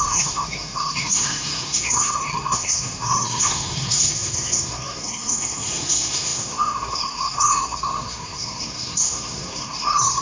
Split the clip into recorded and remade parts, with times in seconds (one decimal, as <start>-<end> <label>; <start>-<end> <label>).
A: 0.0-10.2 remade